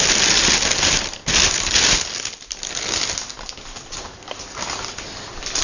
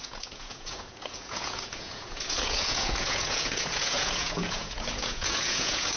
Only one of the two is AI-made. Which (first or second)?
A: second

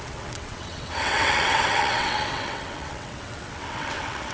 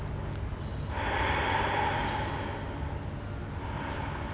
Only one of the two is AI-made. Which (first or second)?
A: first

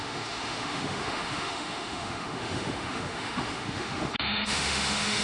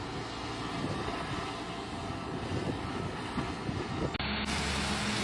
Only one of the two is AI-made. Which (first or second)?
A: first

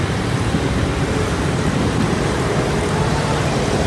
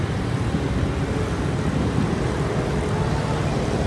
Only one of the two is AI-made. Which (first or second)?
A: first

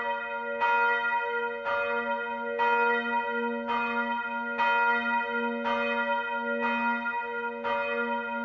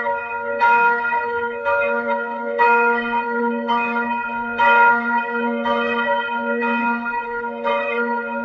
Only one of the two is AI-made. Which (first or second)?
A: second